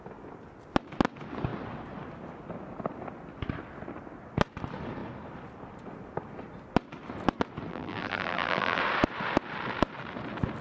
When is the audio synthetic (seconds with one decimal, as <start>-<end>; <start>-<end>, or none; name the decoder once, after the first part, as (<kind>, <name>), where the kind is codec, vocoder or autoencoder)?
7.7-8.8 (vocoder, BigVGAN v2)